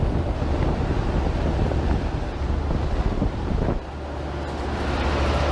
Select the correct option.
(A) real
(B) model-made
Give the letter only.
A